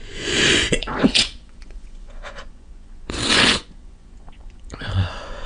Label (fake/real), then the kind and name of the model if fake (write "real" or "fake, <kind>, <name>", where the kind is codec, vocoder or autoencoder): fake, vocoder, Vocos